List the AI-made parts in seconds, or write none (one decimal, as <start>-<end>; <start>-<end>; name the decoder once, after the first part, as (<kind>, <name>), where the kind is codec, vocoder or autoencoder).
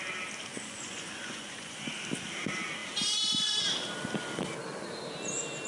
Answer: 0.5-1.9 (vocoder, Vocos)